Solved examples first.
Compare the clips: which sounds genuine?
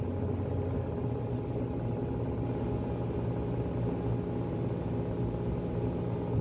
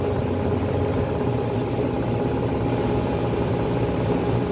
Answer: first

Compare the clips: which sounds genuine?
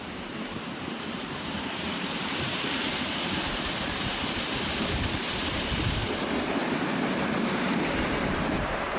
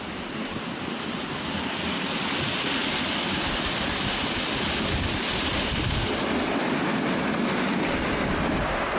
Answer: second